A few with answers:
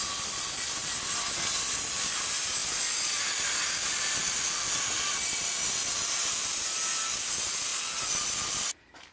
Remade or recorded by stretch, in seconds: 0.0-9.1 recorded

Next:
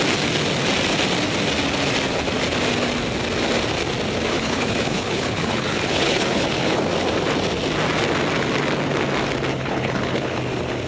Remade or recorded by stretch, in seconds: 0.0-4.3 recorded; 4.3-6.8 remade; 6.8-9.5 recorded; 9.5-10.4 remade; 10.4-10.9 recorded

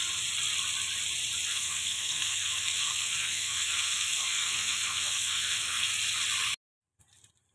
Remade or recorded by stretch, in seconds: 0.0-1.5 recorded; 1.5-5.9 remade; 5.9-7.5 recorded

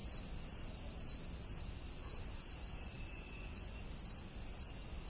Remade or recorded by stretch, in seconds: 0.0-3.1 recorded; 3.1-3.8 remade; 3.8-5.1 recorded

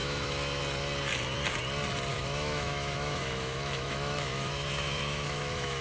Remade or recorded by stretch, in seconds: 0.0-0.6 remade; 0.6-2.1 recorded; 2.1-5.8 remade

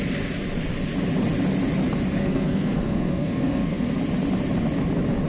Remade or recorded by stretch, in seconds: 0.0-2.2 recorded; 2.2-4.0 remade; 4.0-5.3 recorded

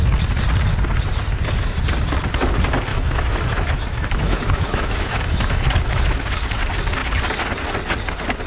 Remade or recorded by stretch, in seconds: 0.0-2.9 recorded; 2.9-6.1 remade; 6.1-8.5 recorded